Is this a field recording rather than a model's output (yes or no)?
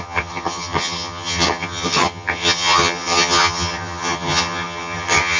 no